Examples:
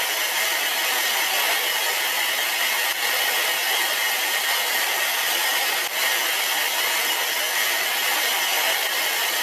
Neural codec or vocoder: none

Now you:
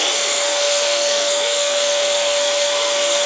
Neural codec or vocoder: codec, SNAC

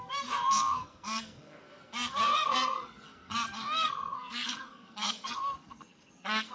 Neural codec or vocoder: codec, SNAC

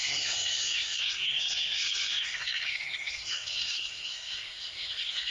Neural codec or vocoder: codec, SNAC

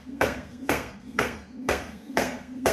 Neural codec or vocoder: codec, SNAC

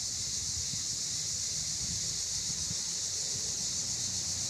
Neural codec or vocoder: none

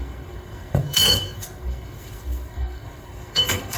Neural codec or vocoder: codec, SNAC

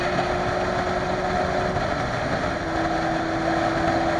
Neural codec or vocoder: none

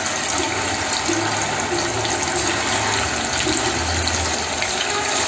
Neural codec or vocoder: none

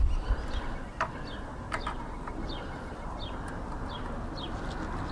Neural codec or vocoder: none